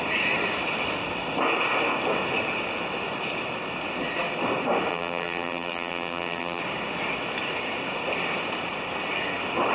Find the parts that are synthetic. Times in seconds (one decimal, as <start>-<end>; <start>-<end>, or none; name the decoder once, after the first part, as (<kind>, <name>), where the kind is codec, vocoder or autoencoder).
4.9-6.6 (vocoder, BigVGAN v2)

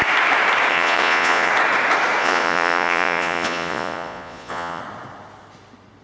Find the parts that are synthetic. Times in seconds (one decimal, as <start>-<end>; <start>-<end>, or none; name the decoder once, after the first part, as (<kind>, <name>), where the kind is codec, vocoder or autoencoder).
0.7-1.5 (vocoder, Vocos); 2.2-4.8

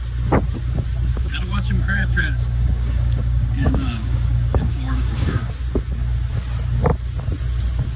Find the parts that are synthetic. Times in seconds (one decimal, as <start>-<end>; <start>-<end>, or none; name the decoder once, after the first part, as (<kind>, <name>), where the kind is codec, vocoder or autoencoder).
1.1-5.5 (codec, DAC)

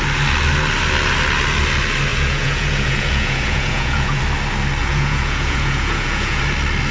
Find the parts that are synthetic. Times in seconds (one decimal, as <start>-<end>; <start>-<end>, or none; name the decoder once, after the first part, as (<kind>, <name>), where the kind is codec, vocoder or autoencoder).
2.1-4.2 (vocoder, Vocos); 4.8-6.4

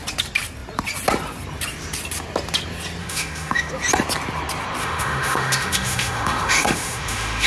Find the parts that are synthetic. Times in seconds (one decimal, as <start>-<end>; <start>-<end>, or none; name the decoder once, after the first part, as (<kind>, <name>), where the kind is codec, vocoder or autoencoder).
3.0-3.7 (autoencoder, DAC-VAE); 4.8-7.5

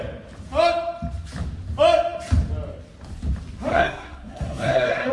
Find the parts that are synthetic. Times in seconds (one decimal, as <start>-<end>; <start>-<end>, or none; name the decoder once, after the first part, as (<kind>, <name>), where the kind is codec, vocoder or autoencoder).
3.7-5.1 (codec, SNAC)

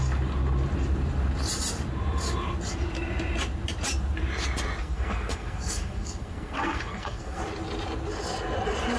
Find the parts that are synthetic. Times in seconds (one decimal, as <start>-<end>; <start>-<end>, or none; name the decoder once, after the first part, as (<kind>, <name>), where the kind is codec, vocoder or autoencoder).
4.8-7.4 (codec, SNAC)